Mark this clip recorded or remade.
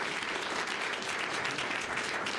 remade